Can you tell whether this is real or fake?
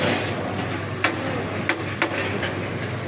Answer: real